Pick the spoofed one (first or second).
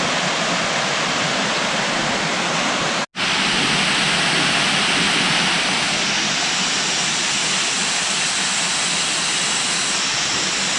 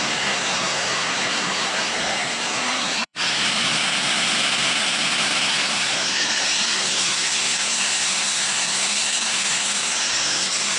second